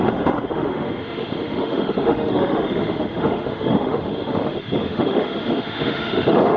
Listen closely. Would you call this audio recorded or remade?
remade